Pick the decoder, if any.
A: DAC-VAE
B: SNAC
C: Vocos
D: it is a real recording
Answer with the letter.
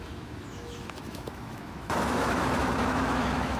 A